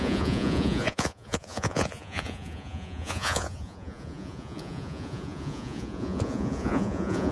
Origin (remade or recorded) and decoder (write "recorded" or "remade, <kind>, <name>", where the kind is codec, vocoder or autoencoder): remade, vocoder, Vocos